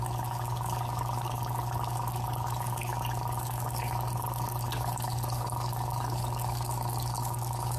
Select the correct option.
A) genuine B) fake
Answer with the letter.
B